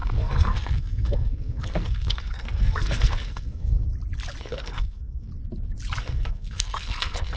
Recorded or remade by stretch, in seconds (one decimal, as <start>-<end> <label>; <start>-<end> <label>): 0.0-3.8 remade; 3.8-4.4 recorded; 4.4-5.3 remade; 5.3-6.0 recorded; 6.0-7.4 remade